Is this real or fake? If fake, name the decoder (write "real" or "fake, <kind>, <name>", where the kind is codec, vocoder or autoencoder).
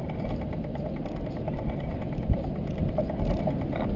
real